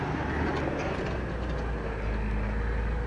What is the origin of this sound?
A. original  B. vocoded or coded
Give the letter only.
A